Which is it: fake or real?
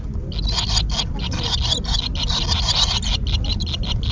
real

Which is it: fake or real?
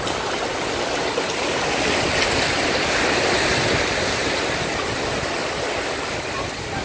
real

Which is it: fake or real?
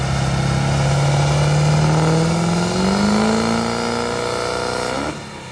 real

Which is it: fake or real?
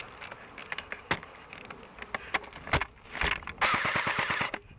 real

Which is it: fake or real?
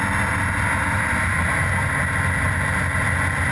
real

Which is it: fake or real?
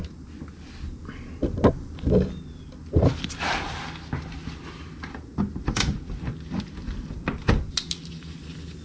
real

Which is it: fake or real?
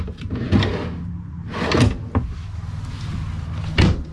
real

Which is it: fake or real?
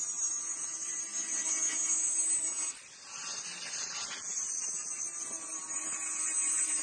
real